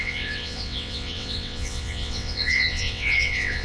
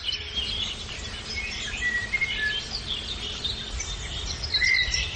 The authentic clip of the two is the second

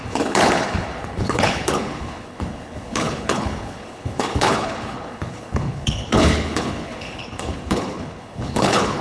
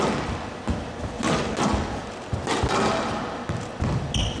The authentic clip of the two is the second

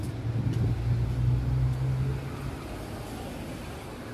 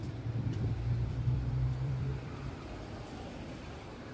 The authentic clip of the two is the first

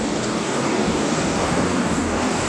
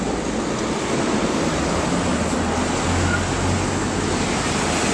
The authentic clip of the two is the second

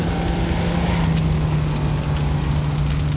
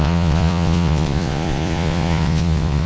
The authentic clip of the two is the first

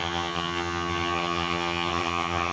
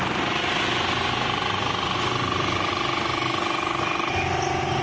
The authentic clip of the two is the second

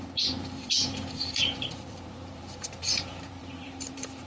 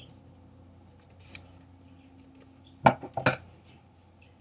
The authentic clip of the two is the second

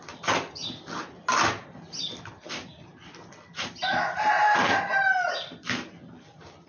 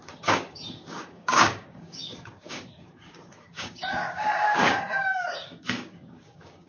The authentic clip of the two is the first